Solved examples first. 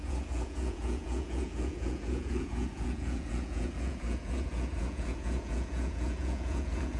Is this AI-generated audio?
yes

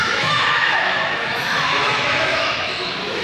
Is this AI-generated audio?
yes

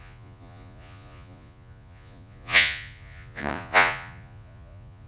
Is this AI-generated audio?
yes